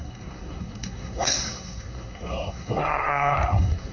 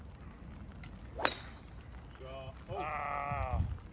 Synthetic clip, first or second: first